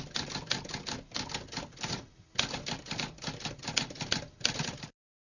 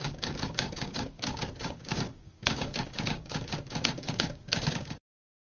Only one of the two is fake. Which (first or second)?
second